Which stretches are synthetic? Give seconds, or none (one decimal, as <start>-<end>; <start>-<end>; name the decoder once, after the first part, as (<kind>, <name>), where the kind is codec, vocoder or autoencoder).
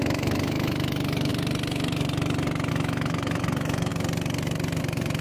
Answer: 0.0-1.3 (autoencoder, DAC-VAE); 2.7-3.9; 4.8-5.2